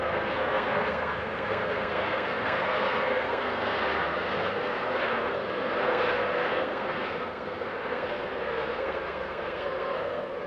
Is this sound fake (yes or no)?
yes